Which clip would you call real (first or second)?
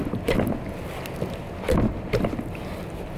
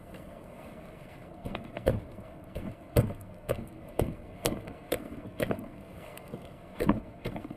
first